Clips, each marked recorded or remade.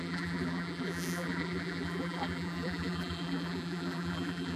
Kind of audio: remade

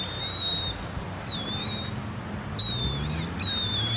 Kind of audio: recorded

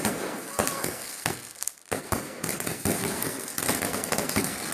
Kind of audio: remade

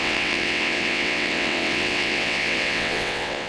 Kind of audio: remade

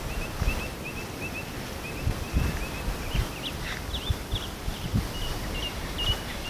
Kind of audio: recorded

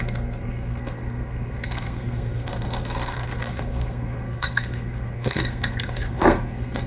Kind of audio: remade